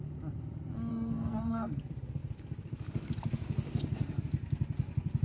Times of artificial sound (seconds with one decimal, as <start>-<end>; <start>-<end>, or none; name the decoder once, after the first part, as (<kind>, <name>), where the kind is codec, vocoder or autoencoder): 0.9-1.8 (codec, SNAC)